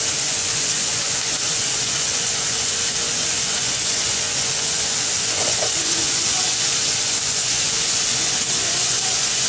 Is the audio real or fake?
fake